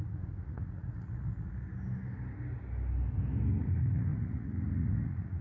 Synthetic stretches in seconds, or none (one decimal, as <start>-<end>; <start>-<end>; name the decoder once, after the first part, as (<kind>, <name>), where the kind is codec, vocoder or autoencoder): 0.0-1.5 (vocoder, Vocos); 3.6-5.4